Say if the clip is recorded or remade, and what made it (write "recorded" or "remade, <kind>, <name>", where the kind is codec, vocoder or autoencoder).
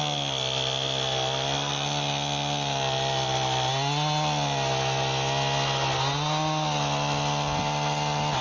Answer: recorded